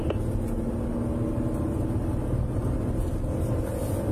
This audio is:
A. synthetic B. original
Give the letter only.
B